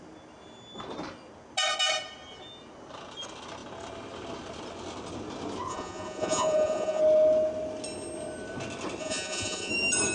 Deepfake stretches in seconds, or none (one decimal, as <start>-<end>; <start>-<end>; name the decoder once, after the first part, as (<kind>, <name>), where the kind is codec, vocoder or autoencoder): 5.7-7.0 (vocoder, Vocos); 9.0-9.7